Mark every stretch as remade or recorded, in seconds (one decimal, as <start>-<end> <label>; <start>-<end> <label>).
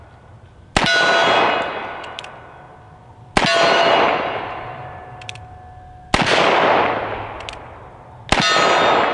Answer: 0.0-9.1 recorded